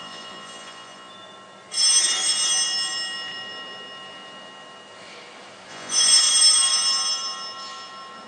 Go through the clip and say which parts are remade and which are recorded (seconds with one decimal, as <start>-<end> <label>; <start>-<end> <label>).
0.0-1.1 remade; 1.1-5.7 recorded; 5.7-6.2 remade; 6.2-8.3 recorded